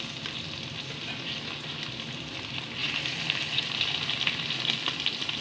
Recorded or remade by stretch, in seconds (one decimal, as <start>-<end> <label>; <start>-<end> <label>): 0.0-5.4 recorded